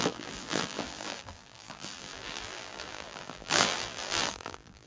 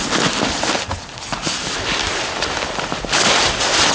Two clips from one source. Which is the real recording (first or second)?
second